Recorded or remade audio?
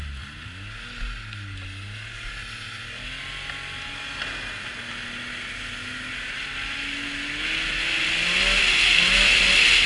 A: recorded